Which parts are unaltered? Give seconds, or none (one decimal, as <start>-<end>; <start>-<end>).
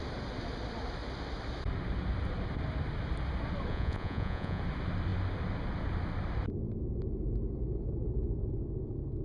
0.0-3.7; 4.6-9.2